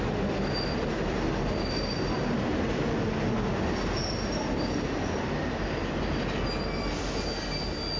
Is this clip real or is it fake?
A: real